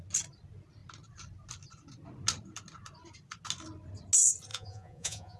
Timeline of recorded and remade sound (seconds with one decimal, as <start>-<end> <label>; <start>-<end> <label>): 0.0-4.5 recorded; 4.5-5.4 remade